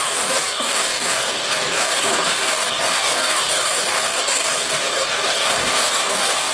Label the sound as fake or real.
fake